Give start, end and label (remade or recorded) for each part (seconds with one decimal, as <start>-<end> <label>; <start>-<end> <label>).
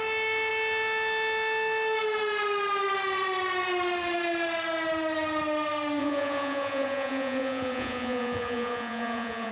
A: 0.0-6.0 recorded; 6.0-9.5 remade